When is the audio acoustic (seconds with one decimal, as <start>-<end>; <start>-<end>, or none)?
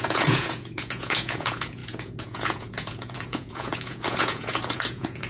none